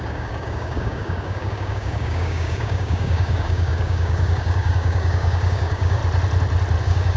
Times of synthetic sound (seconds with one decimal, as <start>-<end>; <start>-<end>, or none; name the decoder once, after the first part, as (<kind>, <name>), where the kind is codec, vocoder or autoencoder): 0.0-6.0 (codec, DAC); 6.8-7.2

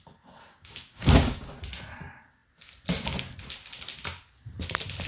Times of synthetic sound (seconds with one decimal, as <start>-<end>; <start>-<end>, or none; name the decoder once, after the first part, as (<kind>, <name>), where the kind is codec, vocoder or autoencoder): 0.5-1.5 (codec, DAC)

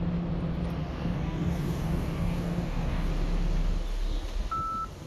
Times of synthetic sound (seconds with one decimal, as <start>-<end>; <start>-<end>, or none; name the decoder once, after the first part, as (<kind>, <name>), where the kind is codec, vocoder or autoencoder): 0.8-3.1 (codec, DAC)

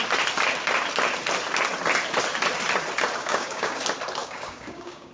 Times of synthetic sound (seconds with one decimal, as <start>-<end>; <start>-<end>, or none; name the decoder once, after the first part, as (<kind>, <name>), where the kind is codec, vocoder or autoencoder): 3.2-3.8 (codec, DAC); 4.2-5.1

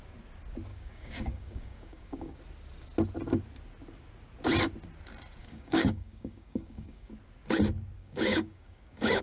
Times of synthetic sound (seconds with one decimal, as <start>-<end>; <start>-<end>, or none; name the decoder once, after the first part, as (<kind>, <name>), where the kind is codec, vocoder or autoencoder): 0.7-2.4 (codec, DAC); 5.4-7.1; 8.0-9.2

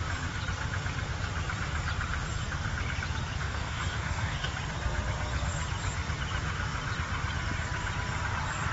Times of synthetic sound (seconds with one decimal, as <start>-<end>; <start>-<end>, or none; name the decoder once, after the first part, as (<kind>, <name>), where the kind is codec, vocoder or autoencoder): 3.4-4.5 (codec, DAC)

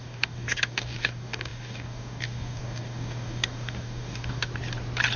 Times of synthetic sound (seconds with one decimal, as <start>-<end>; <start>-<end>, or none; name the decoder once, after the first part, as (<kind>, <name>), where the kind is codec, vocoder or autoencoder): 0.0-4.5 (codec, DAC)

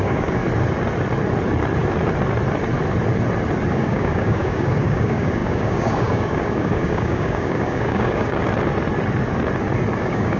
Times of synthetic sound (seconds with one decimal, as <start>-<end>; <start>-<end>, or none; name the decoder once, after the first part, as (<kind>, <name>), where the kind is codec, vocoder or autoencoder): 0.0-0.4 (codec, DAC); 3.7-8.4; 10.0-10.4